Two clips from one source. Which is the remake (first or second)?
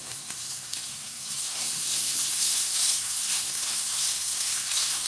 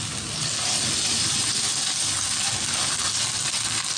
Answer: first